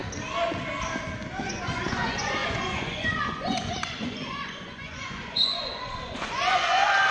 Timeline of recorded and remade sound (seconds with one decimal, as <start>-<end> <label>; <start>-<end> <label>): 0.0-1.4 recorded; 1.4-7.1 remade

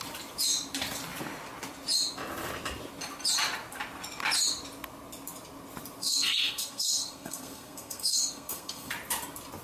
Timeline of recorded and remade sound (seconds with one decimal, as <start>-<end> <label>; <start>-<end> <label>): 0.0-6.0 recorded; 6.0-8.9 remade; 8.9-9.6 recorded

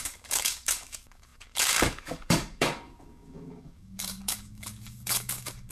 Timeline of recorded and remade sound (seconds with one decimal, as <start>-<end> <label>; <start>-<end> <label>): 0.0-5.7 remade

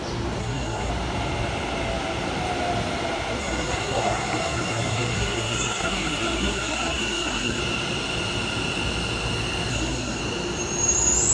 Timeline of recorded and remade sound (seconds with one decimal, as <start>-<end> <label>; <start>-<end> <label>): 0.0-0.4 recorded; 0.4-0.9 remade; 0.9-3.4 recorded; 3.4-7.6 remade; 7.6-9.7 recorded; 9.7-10.2 remade; 10.2-11.3 recorded

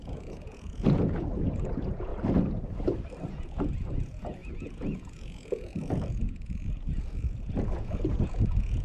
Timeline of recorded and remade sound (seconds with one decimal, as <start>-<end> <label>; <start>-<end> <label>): 0.0-2.1 remade; 2.1-3.3 recorded; 3.3-8.8 remade

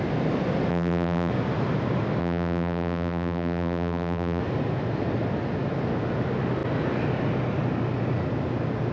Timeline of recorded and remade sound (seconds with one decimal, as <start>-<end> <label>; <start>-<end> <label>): 0.0-0.7 recorded; 0.7-1.3 remade; 1.3-2.2 recorded; 2.2-4.4 remade; 4.4-8.9 recorded

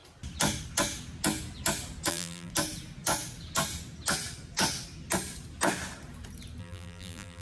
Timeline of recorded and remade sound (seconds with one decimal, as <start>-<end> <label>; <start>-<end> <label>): 0.0-2.1 recorded; 2.1-2.5 remade; 2.5-6.6 recorded; 6.6-7.4 remade